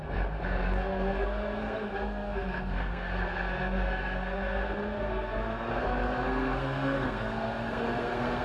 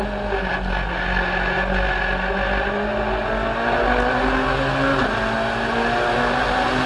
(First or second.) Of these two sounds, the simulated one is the first